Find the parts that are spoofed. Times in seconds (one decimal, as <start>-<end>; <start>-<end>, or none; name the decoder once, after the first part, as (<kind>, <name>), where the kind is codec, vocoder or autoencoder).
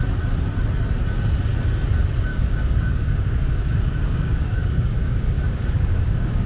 2.3-6.5 (codec, DAC)